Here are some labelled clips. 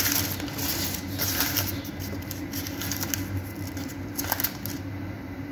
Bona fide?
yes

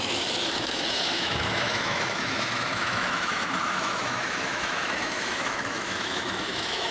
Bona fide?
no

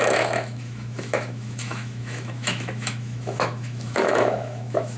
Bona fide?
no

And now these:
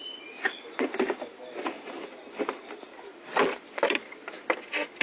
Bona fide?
yes